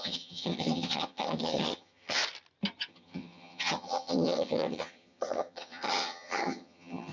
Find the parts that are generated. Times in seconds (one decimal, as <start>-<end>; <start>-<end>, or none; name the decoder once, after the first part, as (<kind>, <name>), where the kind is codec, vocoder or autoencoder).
0.0-2.2 (vocoder, HiFi-GAN); 2.9-7.1